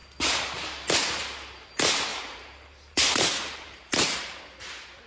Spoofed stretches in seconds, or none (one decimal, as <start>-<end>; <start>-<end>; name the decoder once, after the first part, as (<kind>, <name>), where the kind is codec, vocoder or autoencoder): 2.1-4.4 (vocoder, BigVGAN v2)